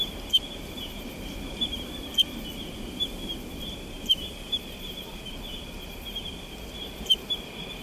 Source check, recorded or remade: remade